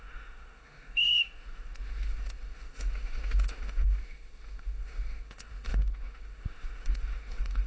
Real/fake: fake